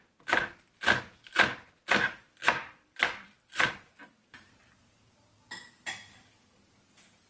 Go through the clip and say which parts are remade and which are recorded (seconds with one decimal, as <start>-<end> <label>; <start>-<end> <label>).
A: 0.0-2.6 recorded; 2.6-3.7 remade; 3.7-7.3 recorded